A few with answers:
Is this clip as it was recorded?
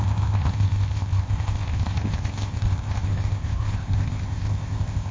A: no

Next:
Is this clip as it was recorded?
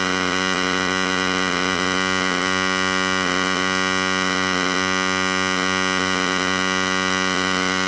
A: yes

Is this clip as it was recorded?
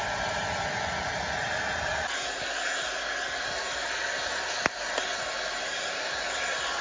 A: yes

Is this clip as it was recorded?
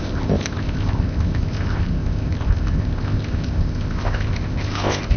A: no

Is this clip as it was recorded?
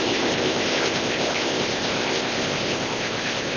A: no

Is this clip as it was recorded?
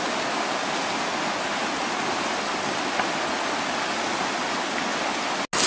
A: yes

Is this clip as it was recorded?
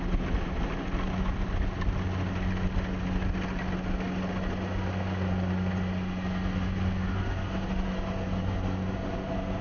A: yes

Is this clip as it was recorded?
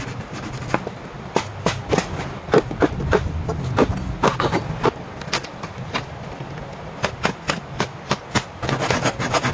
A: yes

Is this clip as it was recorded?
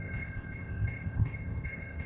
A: no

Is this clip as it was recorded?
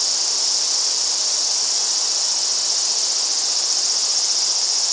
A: yes